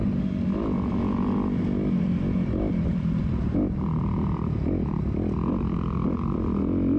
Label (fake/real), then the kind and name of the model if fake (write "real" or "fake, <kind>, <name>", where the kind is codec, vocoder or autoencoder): fake, vocoder, BigVGAN v2